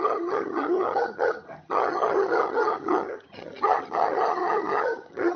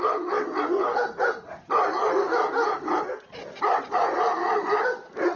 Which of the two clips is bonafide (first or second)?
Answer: second